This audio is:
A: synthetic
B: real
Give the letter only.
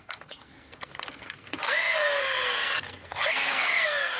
A